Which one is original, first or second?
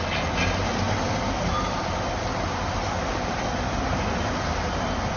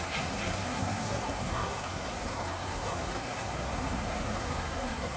first